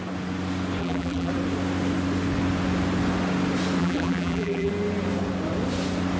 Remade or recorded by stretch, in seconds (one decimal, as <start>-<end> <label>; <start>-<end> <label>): 0.0-0.8 recorded; 0.8-1.3 remade; 1.3-3.8 recorded; 3.8-4.7 remade; 4.7-6.2 recorded